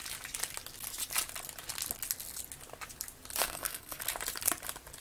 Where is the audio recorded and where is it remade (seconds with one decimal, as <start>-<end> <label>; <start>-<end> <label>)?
0.0-3.4 recorded; 3.4-4.0 remade; 4.0-5.0 recorded